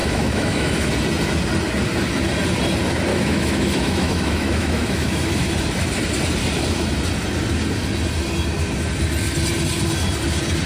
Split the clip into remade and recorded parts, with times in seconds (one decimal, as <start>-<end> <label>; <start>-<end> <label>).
0.0-0.9 remade; 0.9-3.1 recorded; 3.1-5.5 remade; 5.5-10.7 recorded